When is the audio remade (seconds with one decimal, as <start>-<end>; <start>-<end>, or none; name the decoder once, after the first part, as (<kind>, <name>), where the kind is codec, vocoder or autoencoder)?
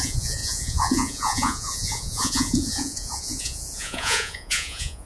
0.0-5.1 (vocoder, Vocos)